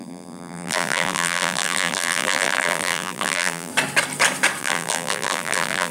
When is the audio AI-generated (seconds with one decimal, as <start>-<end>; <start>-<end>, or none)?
0.0-3.7; 4.6-5.9

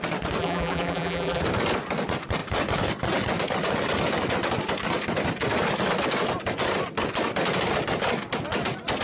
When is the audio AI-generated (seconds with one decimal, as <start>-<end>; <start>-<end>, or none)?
0.4-1.4

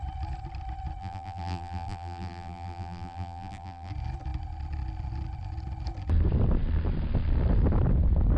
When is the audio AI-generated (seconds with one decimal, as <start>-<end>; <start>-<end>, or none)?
1.0-3.9

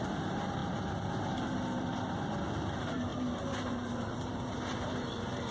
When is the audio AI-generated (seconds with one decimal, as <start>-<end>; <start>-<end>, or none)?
0.0-3.1; 3.7-5.5

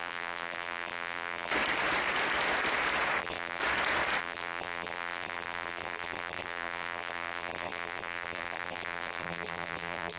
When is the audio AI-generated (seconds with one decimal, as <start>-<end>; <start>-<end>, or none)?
0.0-1.5; 3.2-3.6; 4.2-10.2

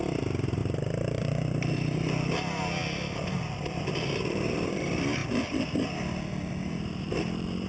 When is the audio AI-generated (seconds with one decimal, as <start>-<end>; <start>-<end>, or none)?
0.0-2.8; 3.6-5.2; 6.6-7.7

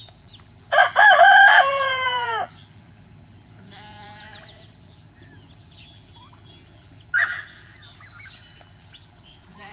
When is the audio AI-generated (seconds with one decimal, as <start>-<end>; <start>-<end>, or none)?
0.0-9.7